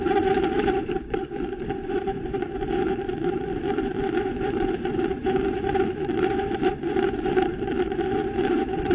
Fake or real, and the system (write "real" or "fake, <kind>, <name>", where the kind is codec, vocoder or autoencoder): fake, vocoder, Vocos